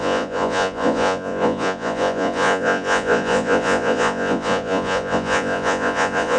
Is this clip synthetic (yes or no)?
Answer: yes